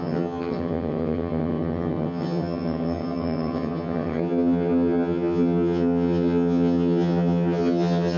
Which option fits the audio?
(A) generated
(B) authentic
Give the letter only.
A